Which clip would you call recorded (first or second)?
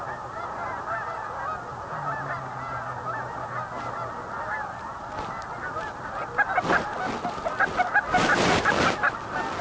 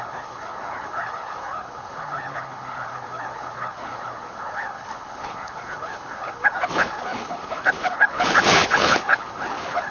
first